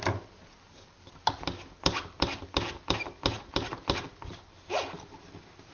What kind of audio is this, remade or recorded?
recorded